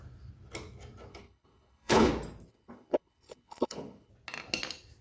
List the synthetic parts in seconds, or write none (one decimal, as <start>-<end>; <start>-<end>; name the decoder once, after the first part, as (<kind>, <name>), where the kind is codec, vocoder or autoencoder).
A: 1.1-2.1 (codec, HILCodec); 2.5-4.1